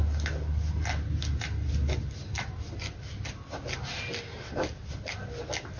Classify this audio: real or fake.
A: real